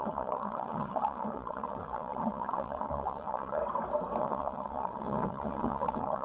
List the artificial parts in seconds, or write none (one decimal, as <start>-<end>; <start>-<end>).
0.0-3.6; 4.2-6.2